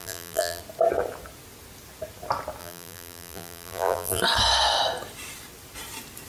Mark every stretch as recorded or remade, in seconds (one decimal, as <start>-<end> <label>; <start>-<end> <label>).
0.0-0.6 remade; 0.6-2.6 recorded; 2.6-4.2 remade; 4.2-6.3 recorded